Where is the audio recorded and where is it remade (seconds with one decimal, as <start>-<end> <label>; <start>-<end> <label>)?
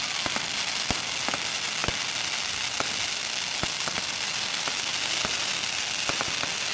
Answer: 0.0-6.7 recorded